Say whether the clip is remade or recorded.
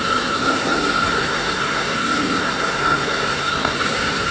remade